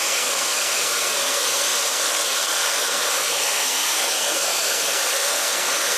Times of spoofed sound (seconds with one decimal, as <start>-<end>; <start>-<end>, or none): 0.0-6.0